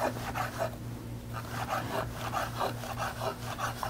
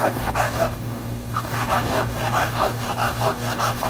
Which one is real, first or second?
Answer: first